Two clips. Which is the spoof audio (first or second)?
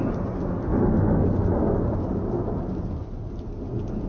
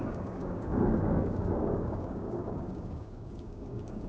second